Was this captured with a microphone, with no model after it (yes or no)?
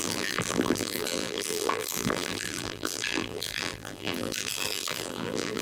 no